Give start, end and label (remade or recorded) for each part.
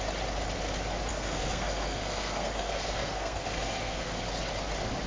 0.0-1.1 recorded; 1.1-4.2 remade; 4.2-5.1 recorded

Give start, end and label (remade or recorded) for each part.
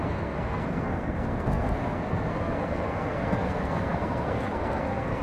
0.0-5.2 remade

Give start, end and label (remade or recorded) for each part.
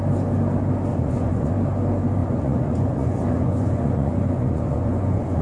0.0-0.9 recorded; 0.9-1.5 remade; 1.5-2.2 recorded; 2.2-5.4 remade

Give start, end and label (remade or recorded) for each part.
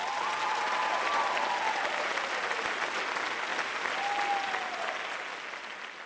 0.0-6.1 recorded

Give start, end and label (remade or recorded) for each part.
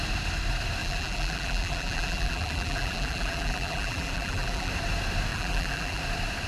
0.0-0.8 recorded; 0.8-4.7 remade; 4.7-5.3 recorded; 5.3-6.0 remade; 6.0-6.5 recorded